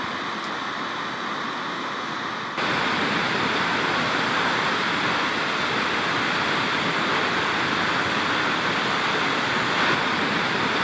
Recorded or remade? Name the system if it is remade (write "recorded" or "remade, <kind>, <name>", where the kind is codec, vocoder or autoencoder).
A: recorded